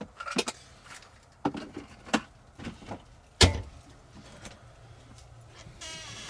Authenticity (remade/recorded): recorded